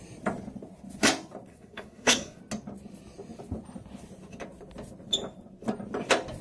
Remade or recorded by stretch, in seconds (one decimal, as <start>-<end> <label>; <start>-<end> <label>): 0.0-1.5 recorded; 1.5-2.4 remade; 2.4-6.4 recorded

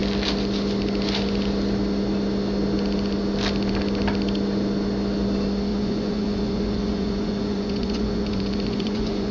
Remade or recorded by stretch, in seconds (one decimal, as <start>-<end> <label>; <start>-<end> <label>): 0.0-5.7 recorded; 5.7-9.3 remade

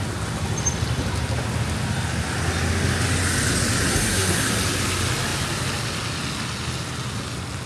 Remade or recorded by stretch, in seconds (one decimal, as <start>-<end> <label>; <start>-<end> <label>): 0.0-3.9 recorded; 3.9-4.5 remade; 4.5-7.7 recorded

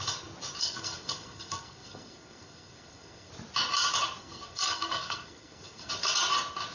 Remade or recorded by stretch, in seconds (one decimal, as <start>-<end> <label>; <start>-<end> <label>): 0.0-0.6 recorded; 0.6-3.3 remade; 3.3-4.2 recorded; 4.2-5.9 remade; 5.9-6.7 recorded

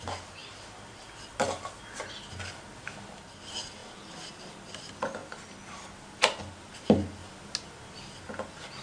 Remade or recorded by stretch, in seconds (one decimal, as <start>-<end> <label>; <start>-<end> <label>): 0.0-8.8 recorded

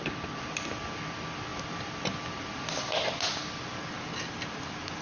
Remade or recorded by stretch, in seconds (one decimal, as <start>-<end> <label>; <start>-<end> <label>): 0.0-0.5 remade; 0.5-1.5 recorded; 1.5-2.5 remade; 2.5-5.0 recorded

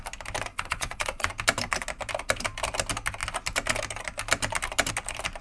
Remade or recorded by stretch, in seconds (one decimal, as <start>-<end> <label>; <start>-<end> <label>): 0.0-0.5 recorded; 0.5-1.3 remade; 1.3-5.4 recorded